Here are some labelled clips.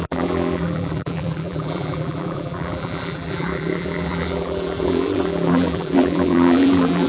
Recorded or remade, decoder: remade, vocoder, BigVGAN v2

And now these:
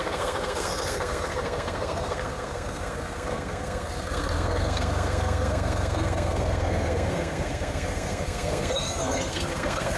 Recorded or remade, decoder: remade, codec, SNAC